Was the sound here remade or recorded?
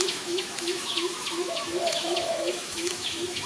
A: remade